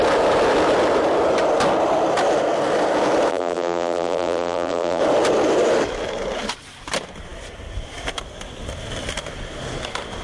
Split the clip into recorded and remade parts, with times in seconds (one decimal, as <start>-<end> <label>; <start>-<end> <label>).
0.0-3.3 recorded; 3.3-5.0 remade; 5.0-10.2 recorded